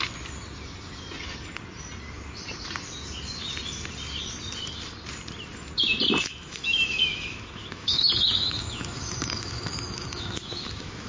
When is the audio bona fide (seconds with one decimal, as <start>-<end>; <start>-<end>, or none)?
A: 0.0-6.2